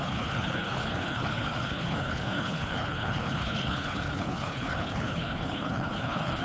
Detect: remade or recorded remade